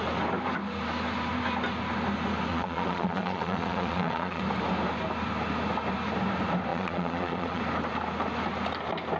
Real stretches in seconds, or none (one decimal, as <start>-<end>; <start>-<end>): 0.0-2.5; 4.4-6.7; 7.6-9.2